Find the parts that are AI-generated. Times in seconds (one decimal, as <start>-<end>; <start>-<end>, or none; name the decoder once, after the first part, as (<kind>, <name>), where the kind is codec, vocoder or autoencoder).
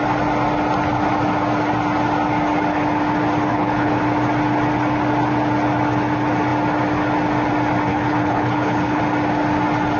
3.5-4.0 (codec, HILCodec); 7.9-9.0